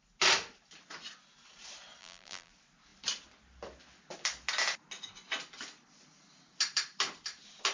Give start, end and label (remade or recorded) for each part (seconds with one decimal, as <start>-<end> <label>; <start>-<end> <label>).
0.0-2.0 recorded; 2.0-2.5 remade; 2.5-7.7 recorded